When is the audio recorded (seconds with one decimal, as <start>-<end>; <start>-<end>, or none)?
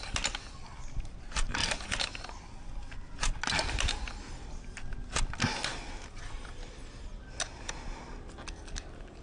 0.0-9.2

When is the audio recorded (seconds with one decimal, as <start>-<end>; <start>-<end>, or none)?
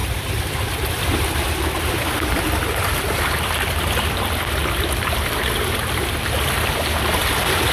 0.0-4.6; 5.4-7.7